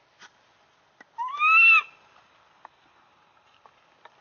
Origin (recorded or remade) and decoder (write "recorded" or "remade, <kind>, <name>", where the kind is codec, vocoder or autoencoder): recorded